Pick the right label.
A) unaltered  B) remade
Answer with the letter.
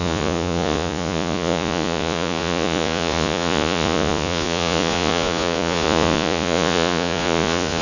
B